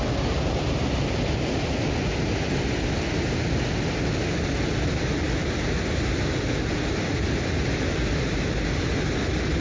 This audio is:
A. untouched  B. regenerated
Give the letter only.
A